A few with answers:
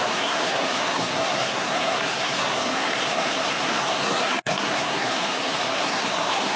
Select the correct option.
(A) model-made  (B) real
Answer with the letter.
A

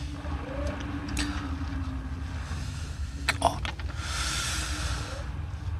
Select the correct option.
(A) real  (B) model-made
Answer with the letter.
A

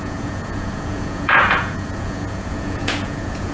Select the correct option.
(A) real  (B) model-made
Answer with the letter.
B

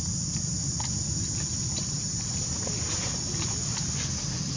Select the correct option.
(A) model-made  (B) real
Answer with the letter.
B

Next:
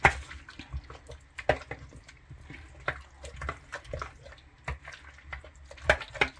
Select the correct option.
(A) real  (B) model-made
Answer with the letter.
A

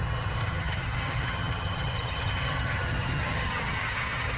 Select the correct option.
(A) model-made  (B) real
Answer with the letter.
A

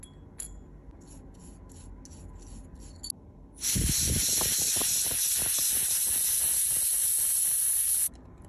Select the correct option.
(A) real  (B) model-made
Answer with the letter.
A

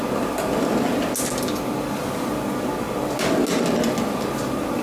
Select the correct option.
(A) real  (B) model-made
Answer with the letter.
A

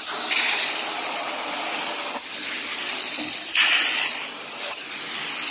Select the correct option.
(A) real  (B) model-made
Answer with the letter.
A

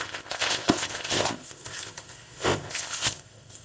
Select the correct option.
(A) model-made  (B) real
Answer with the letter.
A